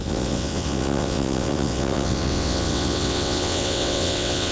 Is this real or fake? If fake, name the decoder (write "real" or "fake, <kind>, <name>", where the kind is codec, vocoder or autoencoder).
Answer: fake, vocoder, WaveNeXt